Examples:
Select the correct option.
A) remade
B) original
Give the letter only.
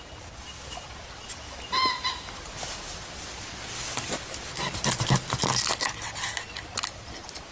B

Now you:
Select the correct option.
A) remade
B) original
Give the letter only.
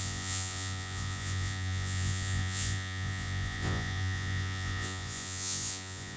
A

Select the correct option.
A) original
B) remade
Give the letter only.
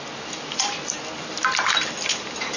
A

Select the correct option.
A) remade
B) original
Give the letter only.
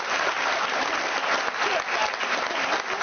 B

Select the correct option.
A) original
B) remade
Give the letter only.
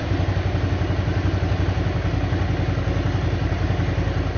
A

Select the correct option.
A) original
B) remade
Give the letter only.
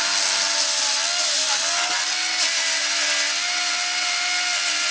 A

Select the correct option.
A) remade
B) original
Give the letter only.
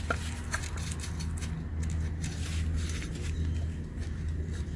B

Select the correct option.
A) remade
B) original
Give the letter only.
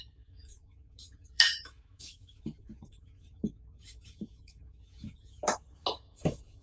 A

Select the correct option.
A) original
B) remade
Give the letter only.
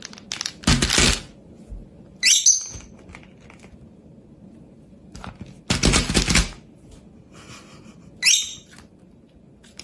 A